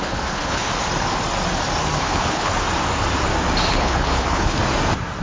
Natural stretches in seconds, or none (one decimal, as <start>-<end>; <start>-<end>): 0.7-2.0; 2.5-3.7; 4.6-5.2